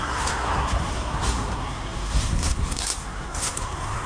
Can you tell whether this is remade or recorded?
remade